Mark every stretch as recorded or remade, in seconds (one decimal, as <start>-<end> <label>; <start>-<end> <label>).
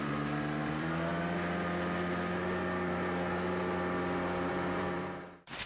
0.0-1.1 remade; 1.1-4.5 recorded; 4.5-5.7 remade